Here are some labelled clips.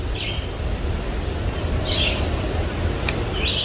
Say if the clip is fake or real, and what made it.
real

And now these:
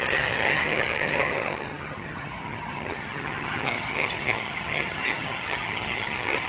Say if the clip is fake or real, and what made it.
fake, vocoder, HiFi-GAN